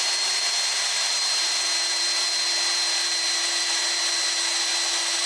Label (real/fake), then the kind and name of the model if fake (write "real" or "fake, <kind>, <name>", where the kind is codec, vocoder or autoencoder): real